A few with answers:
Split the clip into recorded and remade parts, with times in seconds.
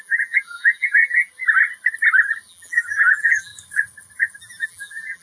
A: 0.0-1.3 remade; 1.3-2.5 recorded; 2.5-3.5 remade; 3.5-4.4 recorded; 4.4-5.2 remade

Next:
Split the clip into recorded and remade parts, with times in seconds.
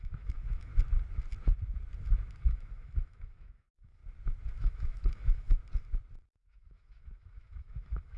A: 0.0-0.7 remade; 0.7-2.3 recorded; 2.3-4.0 remade; 4.0-4.6 recorded; 4.6-5.6 remade; 5.6-6.3 recorded; 6.3-8.2 remade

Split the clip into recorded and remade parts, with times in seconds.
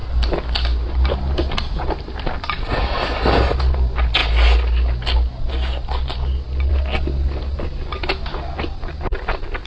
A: 0.0-9.7 recorded